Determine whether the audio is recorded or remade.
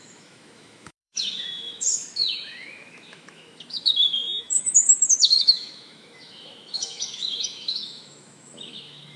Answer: remade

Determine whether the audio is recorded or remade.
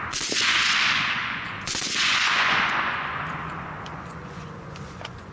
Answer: remade